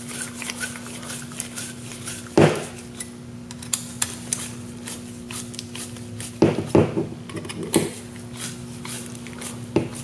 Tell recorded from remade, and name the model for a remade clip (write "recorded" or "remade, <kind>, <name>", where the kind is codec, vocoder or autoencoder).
recorded